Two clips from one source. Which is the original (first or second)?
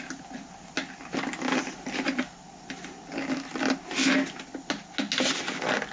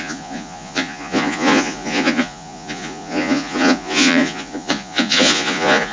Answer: first